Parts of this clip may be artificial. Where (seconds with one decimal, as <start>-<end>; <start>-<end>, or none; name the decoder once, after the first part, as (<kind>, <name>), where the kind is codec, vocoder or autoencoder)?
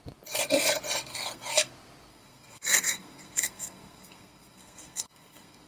1.1-1.7 (codec, SNAC); 2.1-5.7